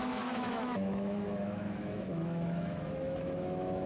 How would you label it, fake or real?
fake